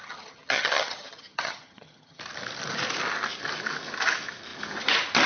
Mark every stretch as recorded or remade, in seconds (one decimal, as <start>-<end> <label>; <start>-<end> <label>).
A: 0.0-2.2 remade; 2.2-5.3 recorded